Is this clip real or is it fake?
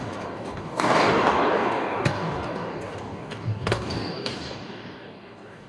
fake